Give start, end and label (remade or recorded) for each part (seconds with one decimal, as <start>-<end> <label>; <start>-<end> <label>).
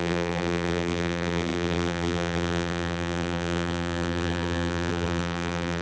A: 0.0-5.8 remade